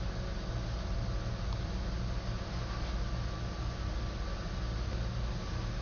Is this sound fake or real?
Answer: real